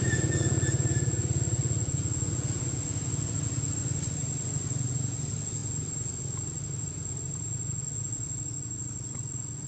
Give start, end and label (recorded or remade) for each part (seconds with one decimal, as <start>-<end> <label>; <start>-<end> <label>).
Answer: 0.0-9.7 recorded